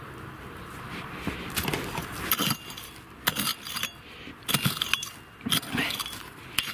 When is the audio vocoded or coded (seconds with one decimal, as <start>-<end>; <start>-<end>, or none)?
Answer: none